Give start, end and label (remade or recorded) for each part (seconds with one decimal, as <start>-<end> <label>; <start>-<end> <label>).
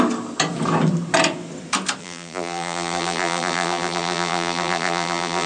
0.0-2.0 recorded; 2.0-5.5 remade